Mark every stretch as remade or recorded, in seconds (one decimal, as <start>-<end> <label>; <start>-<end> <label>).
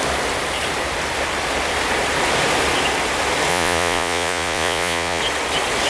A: 0.0-3.5 recorded; 3.5-5.2 remade; 5.2-5.9 recorded